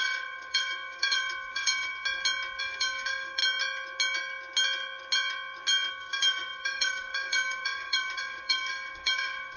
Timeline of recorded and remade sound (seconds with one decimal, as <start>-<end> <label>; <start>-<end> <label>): 0.0-1.9 remade; 1.9-2.6 recorded; 2.6-3.4 remade; 3.4-5.9 recorded; 5.9-9.6 remade